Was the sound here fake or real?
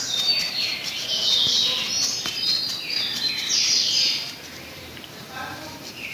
fake